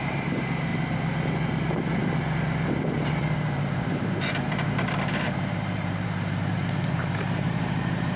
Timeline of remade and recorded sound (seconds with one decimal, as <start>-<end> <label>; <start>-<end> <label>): 0.0-0.7 remade; 0.7-2.3 recorded; 2.3-8.2 remade